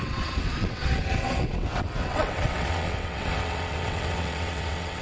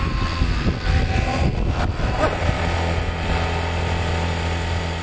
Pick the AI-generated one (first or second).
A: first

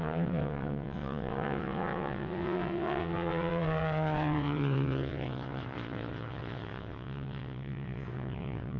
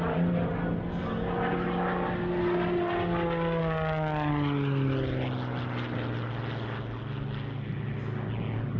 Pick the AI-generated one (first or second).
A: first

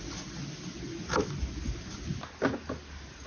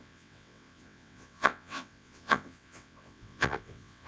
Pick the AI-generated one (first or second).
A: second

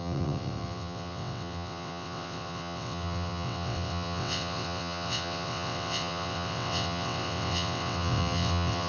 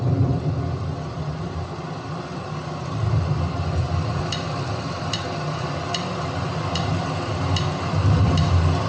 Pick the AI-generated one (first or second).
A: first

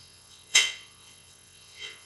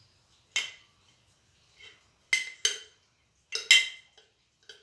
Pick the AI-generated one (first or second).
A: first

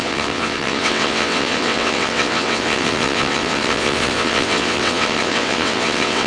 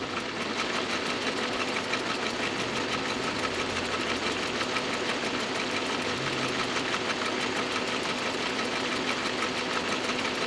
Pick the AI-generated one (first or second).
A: first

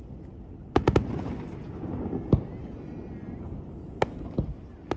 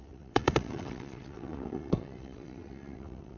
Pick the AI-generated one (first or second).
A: second